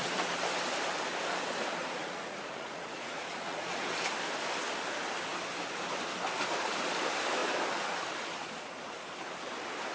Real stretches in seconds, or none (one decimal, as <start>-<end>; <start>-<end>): 0.0-1.8; 3.7-9.9